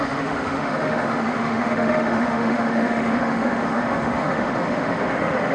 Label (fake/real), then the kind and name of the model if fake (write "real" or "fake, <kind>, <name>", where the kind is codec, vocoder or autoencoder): fake, autoencoder, DAC-VAE